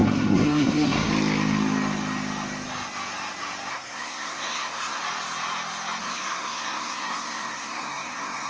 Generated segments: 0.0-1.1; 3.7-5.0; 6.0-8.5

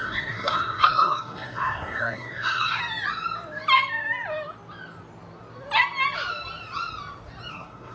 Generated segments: 0.0-2.8; 7.5-7.9

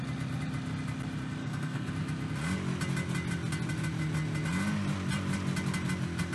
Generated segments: 1.4-1.9

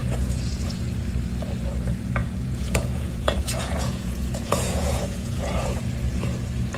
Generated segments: 0.0-0.8; 2.2-5.8

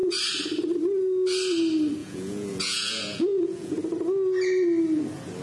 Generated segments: 2.0-3.7

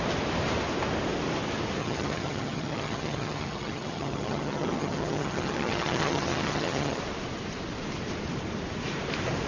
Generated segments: 1.8-7.0

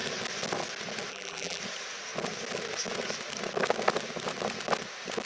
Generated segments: 1.1-1.6